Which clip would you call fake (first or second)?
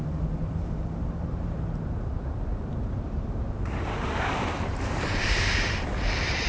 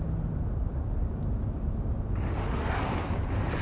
first